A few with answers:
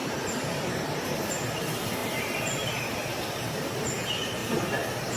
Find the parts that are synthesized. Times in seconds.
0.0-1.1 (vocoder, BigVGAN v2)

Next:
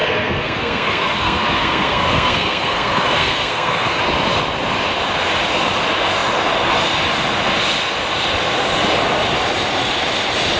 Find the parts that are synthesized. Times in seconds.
0.0-4.0 (codec, SNAC)

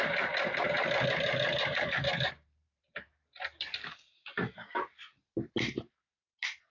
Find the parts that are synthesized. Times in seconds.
1.6-5.3 (vocoder, BigVGAN v2)

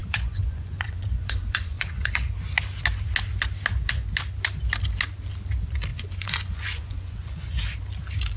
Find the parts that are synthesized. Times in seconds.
0.0-2.3 (vocoder, Vocos); 5.9-7.6

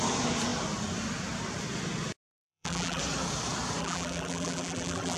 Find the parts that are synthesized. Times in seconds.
2.3-3.0 (vocoder, BigVGAN v2); 3.8-5.2

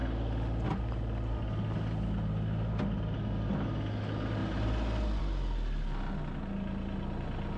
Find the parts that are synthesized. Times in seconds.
none